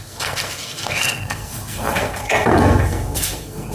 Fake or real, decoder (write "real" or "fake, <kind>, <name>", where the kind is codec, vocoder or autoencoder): fake, codec, SNAC